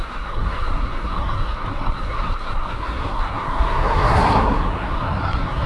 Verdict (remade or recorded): remade